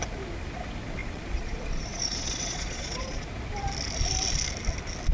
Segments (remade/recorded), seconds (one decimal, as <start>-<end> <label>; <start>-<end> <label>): 0.0-1.0 recorded; 1.0-3.3 remade; 3.3-5.1 recorded